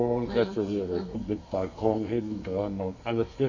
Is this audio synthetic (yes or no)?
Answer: yes